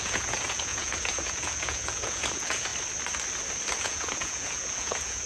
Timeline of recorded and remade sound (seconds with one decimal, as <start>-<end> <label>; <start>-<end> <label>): 0.0-2.7 remade; 2.7-3.8 recorded; 3.8-5.3 remade